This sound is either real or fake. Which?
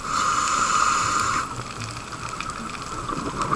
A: real